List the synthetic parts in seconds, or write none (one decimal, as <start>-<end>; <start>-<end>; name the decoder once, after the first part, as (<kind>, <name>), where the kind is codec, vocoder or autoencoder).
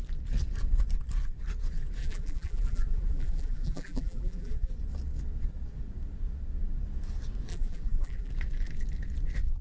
2.0-4.7 (vocoder, BigVGAN v2); 7.5-8.3